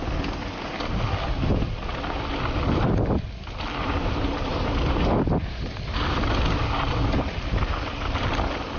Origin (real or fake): real